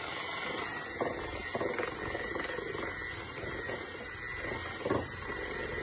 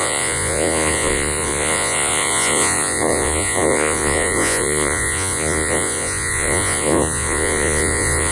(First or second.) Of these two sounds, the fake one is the second